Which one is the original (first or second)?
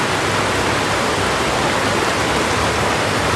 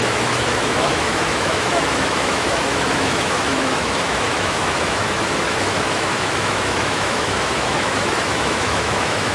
first